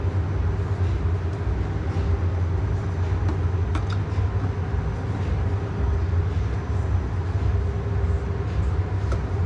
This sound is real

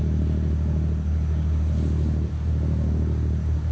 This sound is real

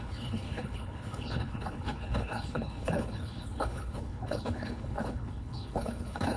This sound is fake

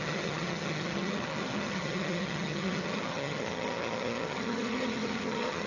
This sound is fake